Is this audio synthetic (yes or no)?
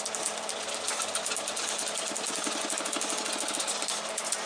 no